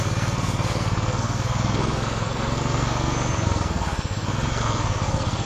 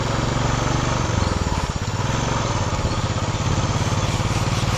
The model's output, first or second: first